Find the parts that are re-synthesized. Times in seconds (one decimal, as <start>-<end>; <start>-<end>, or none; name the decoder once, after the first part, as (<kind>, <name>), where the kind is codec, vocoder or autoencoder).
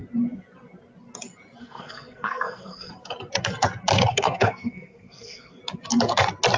1.6-2.9 (codec, SNAC); 4.1-5.6